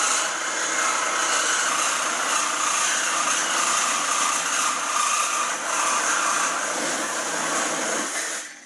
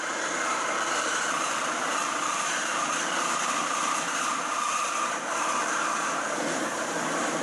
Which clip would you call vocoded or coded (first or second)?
second